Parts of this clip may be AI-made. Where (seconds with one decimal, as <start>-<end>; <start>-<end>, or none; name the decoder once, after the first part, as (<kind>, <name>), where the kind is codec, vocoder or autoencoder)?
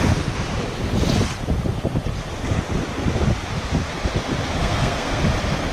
4.6-5.2 (codec, SNAC)